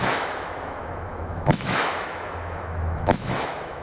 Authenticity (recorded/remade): remade